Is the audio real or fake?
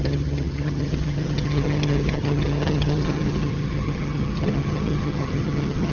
fake